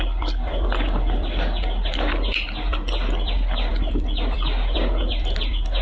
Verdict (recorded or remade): recorded